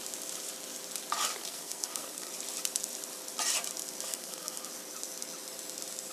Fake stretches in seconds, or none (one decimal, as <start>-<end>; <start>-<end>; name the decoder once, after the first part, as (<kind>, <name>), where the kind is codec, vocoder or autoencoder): 1.4-2.3 (codec, SNAC); 4.1-4.6